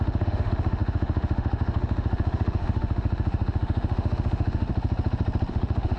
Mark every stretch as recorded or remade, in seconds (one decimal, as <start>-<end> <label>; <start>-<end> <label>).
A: 0.0-4.7 remade; 4.7-5.5 recorded; 5.5-6.0 remade

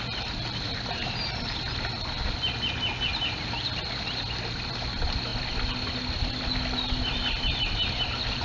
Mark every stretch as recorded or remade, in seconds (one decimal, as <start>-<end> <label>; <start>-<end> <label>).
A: 0.0-8.4 recorded

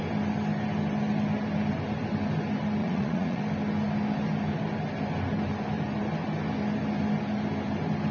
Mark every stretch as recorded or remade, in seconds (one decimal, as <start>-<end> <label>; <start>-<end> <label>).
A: 0.0-2.8 recorded; 2.8-3.4 remade; 3.4-8.1 recorded

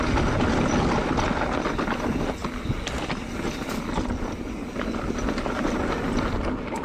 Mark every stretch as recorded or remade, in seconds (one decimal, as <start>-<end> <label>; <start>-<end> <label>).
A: 0.0-6.8 recorded

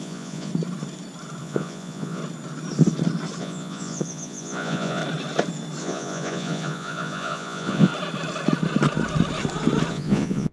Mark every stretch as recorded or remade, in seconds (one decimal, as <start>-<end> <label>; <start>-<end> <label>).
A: 0.0-0.5 remade; 0.5-1.4 recorded; 1.4-2.2 remade; 2.2-3.4 recorded; 3.4-5.0 remade; 5.0-5.8 recorded; 5.8-7.9 remade; 7.9-9.9 recorded; 9.9-10.5 remade

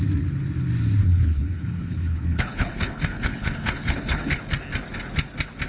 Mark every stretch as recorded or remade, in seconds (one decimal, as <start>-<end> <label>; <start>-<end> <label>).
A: 0.0-1.0 recorded; 1.0-4.4 remade; 4.4-5.7 recorded

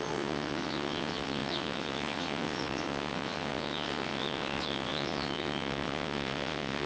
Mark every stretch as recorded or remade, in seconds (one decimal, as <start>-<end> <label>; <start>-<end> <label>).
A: 0.0-6.9 remade

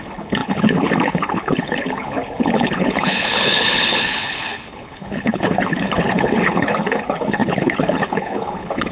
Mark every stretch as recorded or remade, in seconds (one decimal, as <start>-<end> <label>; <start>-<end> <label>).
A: 0.0-8.9 remade